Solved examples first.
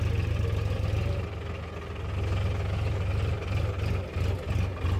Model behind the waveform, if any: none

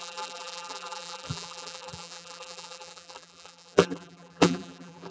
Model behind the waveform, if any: vocoder, BigVGAN v2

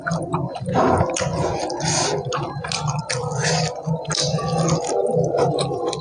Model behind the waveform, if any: none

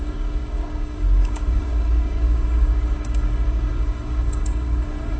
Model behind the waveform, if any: codec, DAC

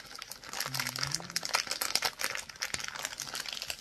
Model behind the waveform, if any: none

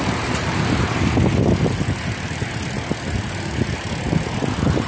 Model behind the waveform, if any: none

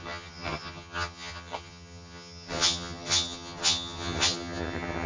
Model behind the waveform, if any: vocoder, HiFi-GAN